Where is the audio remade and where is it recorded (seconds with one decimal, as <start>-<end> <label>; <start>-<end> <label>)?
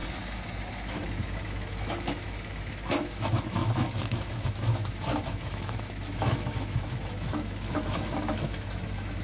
0.0-0.6 recorded; 0.6-9.2 remade